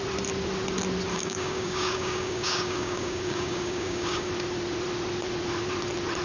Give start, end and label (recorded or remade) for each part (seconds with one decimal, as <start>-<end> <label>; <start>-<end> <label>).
0.0-1.1 recorded; 1.1-4.3 remade; 4.3-6.2 recorded